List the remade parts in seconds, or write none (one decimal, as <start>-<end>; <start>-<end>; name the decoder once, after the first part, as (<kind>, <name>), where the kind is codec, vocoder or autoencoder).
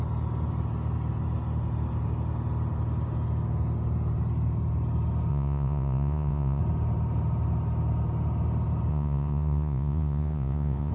5.3-6.6 (vocoder, Vocos); 8.9-10.9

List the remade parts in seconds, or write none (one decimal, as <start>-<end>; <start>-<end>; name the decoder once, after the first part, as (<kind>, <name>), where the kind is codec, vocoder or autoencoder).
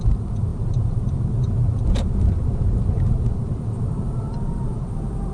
0.0-5.3 (vocoder, BigVGAN v2)